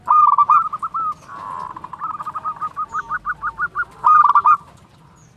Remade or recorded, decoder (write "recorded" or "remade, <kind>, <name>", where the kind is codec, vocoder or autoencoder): recorded